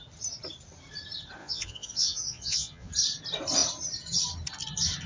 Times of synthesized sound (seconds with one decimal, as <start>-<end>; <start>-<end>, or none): 1.4-2.9